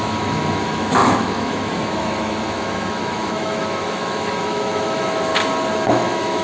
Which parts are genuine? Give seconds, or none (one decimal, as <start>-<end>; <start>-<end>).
5.3-5.9